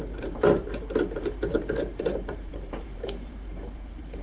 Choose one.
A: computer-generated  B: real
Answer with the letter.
A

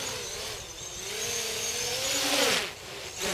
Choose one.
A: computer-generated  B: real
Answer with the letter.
B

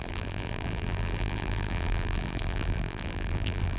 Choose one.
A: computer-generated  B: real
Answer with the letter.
A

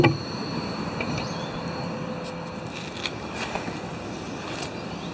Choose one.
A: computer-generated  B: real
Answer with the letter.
B